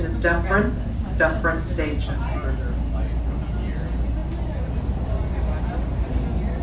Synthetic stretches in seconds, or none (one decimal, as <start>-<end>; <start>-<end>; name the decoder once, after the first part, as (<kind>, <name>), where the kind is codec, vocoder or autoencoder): none